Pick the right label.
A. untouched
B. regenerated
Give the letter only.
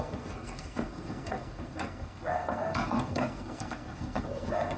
B